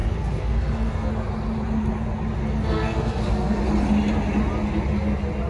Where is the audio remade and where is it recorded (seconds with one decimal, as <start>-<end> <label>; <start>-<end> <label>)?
0.0-1.1 remade; 1.1-2.4 recorded; 2.4-3.6 remade; 3.6-5.5 recorded